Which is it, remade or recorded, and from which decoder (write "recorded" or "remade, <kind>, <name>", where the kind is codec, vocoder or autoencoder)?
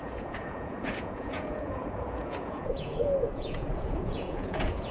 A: remade, vocoder, Vocos